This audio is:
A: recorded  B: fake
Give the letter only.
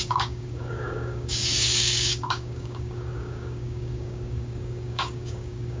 B